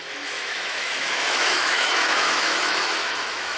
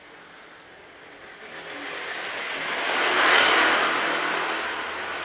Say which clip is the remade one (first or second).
first